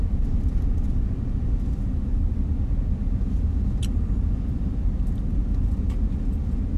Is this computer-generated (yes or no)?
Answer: no